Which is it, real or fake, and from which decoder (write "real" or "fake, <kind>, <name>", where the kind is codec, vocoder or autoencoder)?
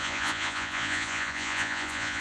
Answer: fake, vocoder, Vocos